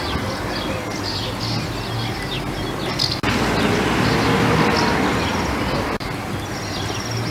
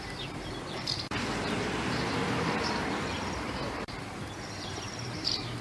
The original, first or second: first